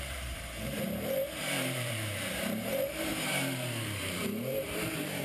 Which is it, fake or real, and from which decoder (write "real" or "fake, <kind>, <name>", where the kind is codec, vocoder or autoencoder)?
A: fake, vocoder, BigVGAN v2